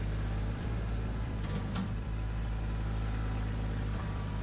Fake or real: fake